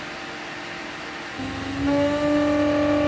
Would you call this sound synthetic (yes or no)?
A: no